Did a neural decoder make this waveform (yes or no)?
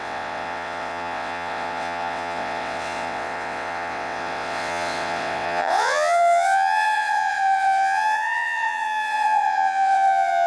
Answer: yes